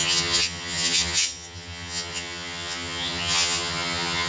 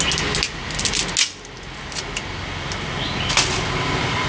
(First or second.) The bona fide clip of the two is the second